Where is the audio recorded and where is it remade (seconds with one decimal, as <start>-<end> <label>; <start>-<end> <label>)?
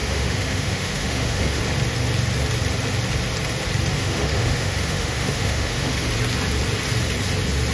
0.0-1.6 remade; 1.6-3.9 recorded; 3.9-6.1 remade; 6.1-7.7 recorded